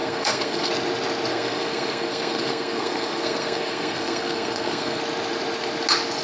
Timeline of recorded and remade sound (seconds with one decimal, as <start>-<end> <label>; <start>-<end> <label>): 0.0-0.7 remade; 0.7-1.3 recorded; 1.3-5.0 remade; 5.0-6.2 recorded